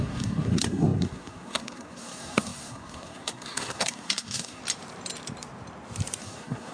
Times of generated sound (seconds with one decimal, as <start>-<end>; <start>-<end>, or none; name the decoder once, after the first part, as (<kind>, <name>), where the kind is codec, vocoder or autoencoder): 0.0-4.6 (codec, SNAC); 6.2-6.7